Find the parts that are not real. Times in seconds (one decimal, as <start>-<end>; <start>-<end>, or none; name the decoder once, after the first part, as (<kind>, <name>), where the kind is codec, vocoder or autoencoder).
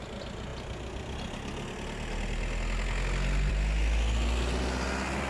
none